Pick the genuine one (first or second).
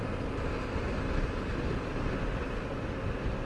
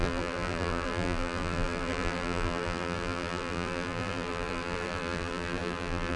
first